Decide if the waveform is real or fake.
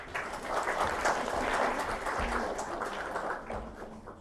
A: fake